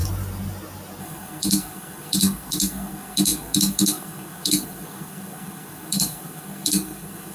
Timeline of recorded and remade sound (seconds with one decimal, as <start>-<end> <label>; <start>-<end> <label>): 0.0-1.0 recorded; 1.0-7.3 remade